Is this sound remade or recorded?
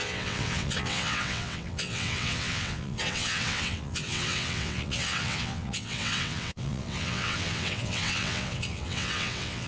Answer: remade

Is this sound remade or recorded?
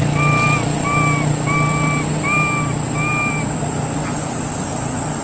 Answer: recorded